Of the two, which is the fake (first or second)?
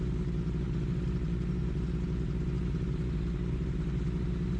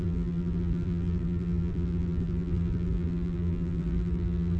second